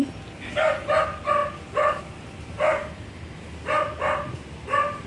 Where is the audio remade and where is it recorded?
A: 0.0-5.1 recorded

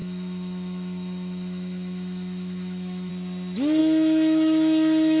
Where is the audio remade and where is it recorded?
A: 0.0-3.1 remade; 3.1-3.8 recorded; 3.8-5.2 remade